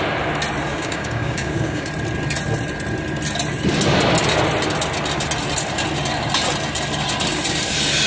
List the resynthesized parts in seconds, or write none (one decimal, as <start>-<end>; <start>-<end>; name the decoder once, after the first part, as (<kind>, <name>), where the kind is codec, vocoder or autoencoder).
0.7-1.9 (codec, DAC)